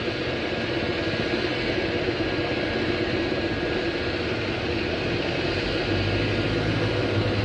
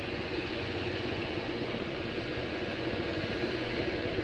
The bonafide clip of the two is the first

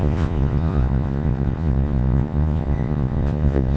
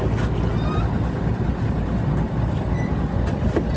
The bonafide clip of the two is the second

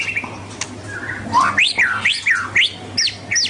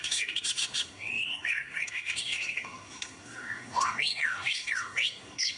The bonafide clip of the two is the first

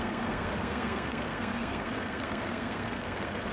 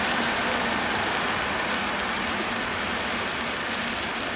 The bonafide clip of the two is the second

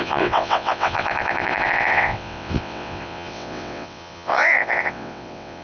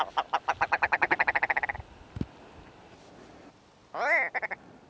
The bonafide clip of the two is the second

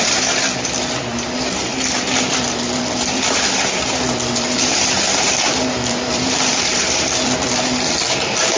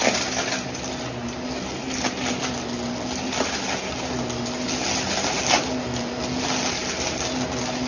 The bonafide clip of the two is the second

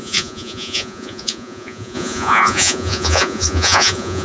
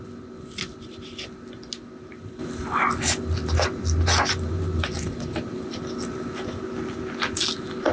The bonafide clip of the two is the second